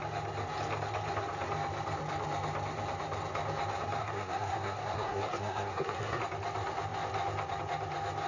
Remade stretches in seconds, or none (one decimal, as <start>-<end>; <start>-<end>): 4.0-6.2